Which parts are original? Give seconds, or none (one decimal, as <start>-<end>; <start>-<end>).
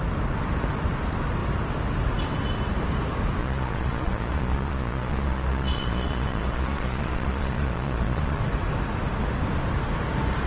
0.0-3.4; 8.4-10.5